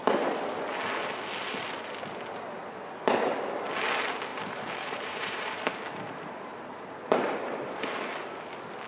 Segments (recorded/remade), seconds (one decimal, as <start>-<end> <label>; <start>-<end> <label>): 0.0-4.3 recorded; 4.3-5.5 remade; 5.5-6.5 recorded; 6.5-7.6 remade; 7.6-8.9 recorded

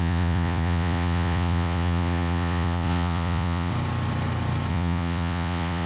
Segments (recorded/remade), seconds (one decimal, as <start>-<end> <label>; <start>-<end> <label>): 0.0-3.7 remade; 3.7-4.7 recorded; 4.7-5.9 remade

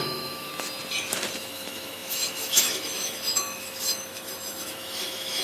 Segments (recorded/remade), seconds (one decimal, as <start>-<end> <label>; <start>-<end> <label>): 0.0-0.5 remade; 0.5-1.4 recorded; 1.4-5.4 remade

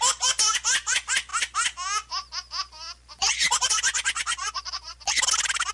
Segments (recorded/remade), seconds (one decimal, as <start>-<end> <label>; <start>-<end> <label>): 0.0-5.7 recorded